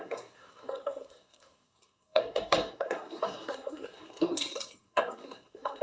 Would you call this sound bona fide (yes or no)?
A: no